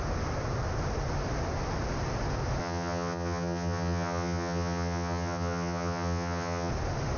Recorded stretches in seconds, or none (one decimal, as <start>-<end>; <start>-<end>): 0.0-2.6; 6.7-7.2